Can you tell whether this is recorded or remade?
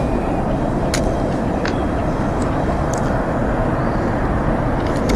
recorded